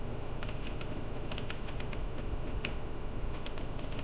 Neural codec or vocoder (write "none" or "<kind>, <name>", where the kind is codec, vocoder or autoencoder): autoencoder, DAC-VAE